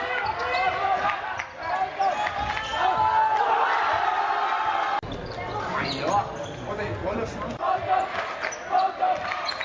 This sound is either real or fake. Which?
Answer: real